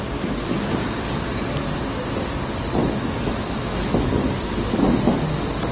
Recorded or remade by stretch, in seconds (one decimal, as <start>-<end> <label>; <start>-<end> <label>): 0.0-2.8 recorded; 2.8-4.1 remade; 4.1-5.7 recorded